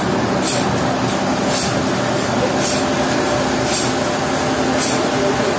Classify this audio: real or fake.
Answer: real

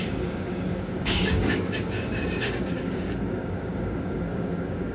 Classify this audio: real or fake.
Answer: fake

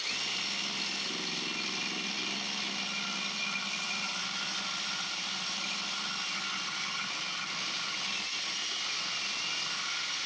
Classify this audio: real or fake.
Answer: real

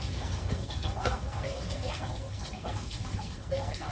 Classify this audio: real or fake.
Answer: fake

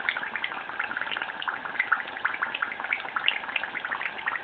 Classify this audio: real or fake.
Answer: real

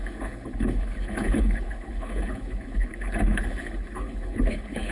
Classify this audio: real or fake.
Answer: fake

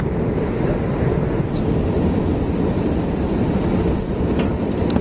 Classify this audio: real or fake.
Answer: fake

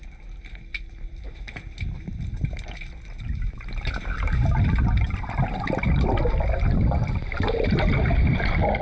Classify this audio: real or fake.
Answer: real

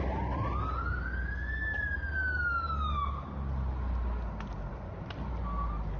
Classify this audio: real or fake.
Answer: real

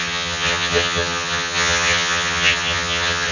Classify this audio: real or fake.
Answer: fake